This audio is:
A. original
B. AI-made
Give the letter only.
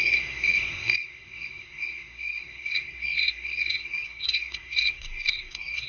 B